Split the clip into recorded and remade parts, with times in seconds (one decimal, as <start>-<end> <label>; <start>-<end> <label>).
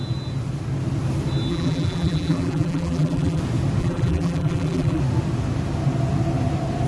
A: 0.0-1.5 recorded; 1.5-3.4 remade; 3.4-3.8 recorded; 3.8-5.0 remade; 5.0-6.9 recorded